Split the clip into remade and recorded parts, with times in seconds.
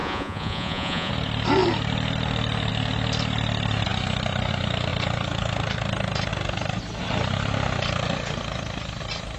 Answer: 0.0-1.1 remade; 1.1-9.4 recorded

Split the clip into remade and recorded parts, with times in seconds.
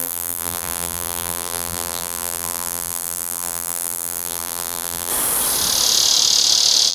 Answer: 0.0-5.1 remade; 5.1-6.9 recorded